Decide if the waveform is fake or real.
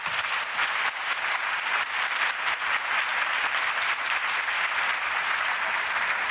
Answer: real